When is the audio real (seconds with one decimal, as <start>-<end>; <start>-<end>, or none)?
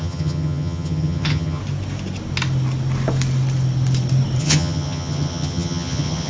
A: 1.6-4.4